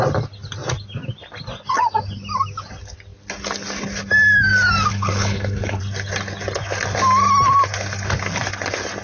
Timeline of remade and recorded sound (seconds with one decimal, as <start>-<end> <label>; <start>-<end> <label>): 0.0-4.9 recorded; 4.9-5.8 remade; 5.8-9.0 recorded